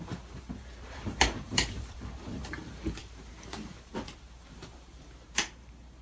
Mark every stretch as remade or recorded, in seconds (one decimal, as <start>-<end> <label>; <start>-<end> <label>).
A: 0.0-6.0 remade